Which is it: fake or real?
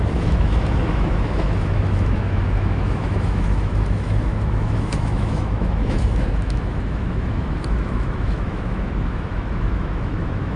fake